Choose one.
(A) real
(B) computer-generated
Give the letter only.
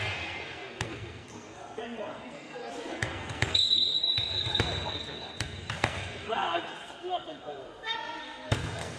B